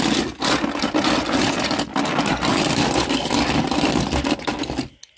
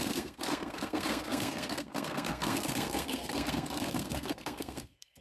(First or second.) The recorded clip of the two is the first